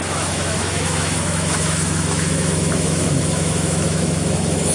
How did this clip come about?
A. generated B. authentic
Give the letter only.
A